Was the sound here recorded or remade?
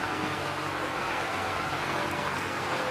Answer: remade